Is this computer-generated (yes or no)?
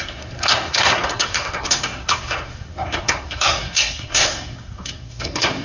yes